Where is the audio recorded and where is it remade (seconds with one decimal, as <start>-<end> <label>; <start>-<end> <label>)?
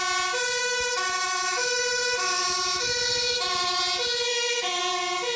0.0-0.6 recorded; 0.6-3.8 remade; 3.8-4.3 recorded; 4.3-4.8 remade; 4.8-5.4 recorded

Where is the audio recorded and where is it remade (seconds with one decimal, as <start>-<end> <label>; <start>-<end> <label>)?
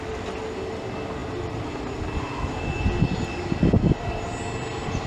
0.0-5.1 recorded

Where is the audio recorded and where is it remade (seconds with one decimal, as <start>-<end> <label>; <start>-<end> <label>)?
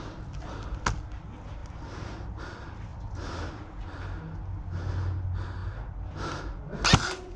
0.0-2.9 recorded; 2.9-3.5 remade; 3.5-7.4 recorded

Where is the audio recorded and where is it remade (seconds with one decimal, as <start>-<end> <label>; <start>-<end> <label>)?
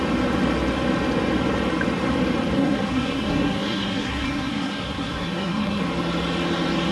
0.0-2.6 recorded; 2.6-5.8 remade; 5.8-6.9 recorded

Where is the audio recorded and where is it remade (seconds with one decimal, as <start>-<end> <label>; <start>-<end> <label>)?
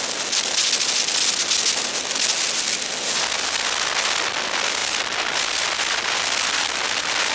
0.0-7.3 recorded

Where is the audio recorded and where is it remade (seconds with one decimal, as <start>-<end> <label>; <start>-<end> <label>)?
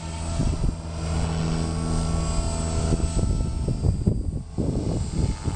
0.0-5.6 recorded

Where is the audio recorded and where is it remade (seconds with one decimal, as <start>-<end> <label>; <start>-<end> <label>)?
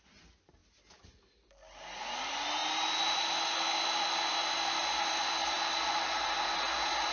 0.0-7.1 recorded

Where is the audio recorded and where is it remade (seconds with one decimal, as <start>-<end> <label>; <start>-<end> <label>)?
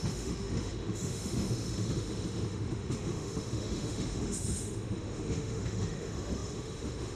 0.0-7.2 remade